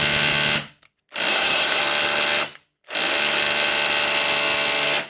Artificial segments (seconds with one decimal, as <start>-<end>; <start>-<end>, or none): 1.3-1.8